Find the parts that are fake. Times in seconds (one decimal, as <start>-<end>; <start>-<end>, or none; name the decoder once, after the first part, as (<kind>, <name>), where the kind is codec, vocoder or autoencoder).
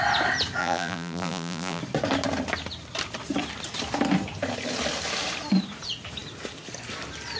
0.6-1.8 (vocoder, BigVGAN v2)